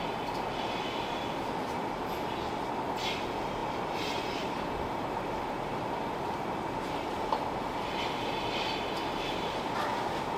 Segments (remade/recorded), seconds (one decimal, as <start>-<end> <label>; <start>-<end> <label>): 0.0-10.4 recorded